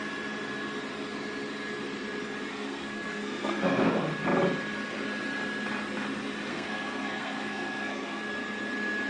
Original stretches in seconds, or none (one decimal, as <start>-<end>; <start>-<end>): 0.0-2.5; 3.9-6.5; 8.2-9.1